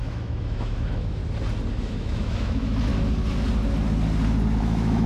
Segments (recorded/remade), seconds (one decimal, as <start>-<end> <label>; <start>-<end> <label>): 0.0-1.2 remade; 1.2-1.8 recorded; 1.8-2.9 remade; 2.9-4.6 recorded; 4.6-5.1 remade